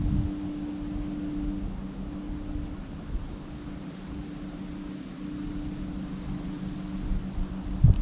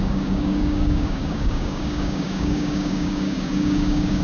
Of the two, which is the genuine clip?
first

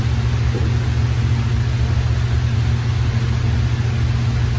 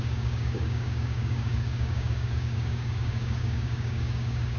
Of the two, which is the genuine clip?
first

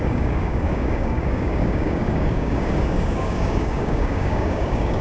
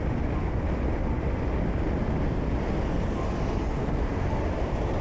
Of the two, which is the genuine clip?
second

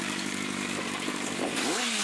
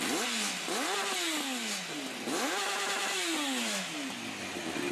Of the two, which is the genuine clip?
second